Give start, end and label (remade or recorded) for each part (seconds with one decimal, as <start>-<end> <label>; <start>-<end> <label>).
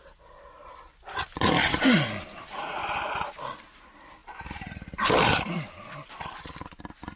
0.0-7.2 recorded